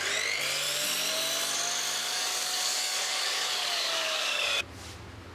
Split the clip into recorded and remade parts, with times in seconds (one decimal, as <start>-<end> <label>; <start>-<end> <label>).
0.0-2.0 recorded; 2.0-4.6 remade; 4.6-5.3 recorded